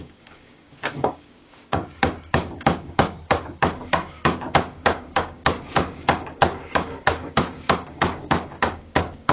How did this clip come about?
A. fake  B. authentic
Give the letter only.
A